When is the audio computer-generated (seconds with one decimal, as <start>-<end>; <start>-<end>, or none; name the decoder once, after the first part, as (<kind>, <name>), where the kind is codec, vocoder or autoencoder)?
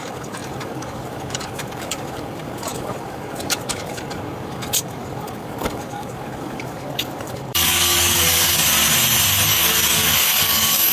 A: 0.0-8.6 (codec, DAC); 9.5-10.9